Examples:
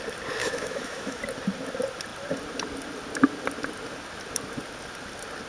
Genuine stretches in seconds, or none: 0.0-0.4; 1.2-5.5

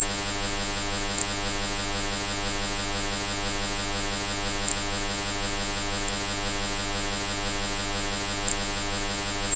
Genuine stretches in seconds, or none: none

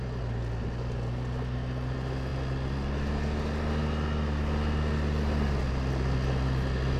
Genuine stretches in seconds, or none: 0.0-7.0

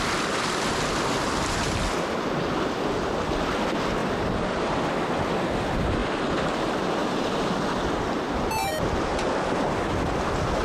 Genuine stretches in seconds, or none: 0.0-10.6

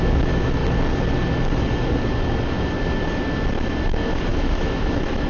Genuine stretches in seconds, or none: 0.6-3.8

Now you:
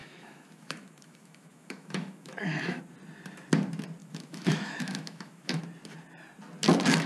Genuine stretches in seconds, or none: 2.8-4.0; 5.6-7.1

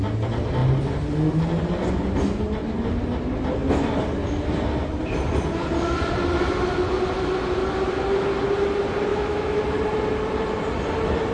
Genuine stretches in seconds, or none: 0.0-9.1; 9.6-11.3